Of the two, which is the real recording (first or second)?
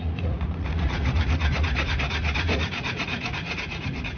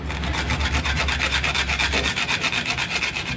second